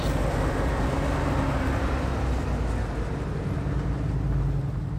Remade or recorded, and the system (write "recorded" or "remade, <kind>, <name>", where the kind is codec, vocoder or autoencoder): recorded